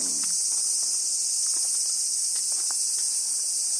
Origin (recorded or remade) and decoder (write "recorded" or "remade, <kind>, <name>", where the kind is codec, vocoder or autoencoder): recorded